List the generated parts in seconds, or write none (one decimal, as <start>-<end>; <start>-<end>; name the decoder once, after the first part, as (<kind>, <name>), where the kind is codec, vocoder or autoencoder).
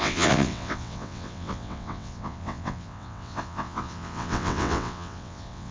0.0-5.7 (vocoder, WaveNeXt)